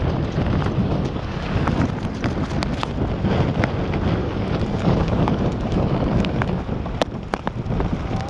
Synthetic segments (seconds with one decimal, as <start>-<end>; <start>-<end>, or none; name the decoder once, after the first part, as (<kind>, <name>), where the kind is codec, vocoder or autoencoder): 0.8-1.8 (codec, DAC); 4.2-6.7